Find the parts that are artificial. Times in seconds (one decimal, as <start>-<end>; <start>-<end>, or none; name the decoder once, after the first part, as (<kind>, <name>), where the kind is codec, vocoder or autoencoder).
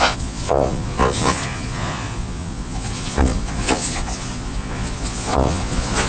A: 0.0-6.1 (vocoder, Vocos)